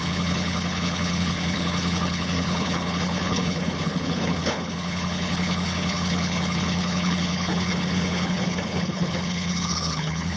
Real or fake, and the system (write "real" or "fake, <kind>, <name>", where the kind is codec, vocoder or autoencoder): fake, codec, HILCodec